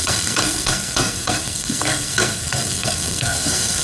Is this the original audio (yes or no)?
no